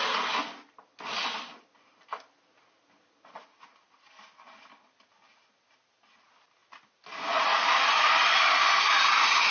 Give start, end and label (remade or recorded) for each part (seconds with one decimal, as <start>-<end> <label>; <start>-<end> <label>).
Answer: 0.0-9.5 recorded